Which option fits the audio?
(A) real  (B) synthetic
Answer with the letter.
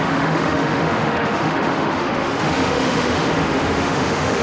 B